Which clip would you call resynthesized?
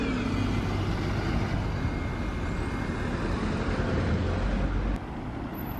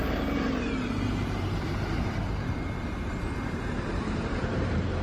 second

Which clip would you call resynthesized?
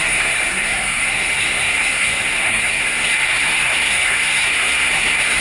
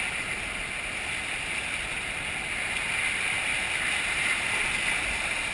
first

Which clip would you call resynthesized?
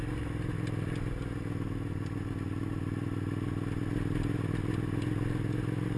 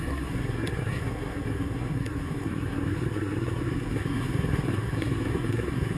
second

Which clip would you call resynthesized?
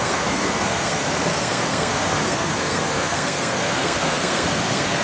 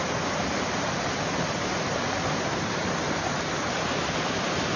first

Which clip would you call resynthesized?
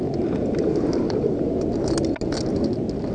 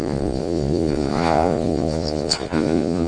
second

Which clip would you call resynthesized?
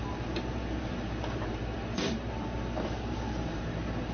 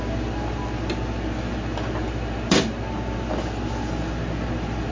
first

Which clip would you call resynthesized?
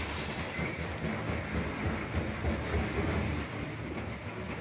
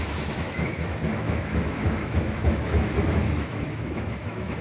second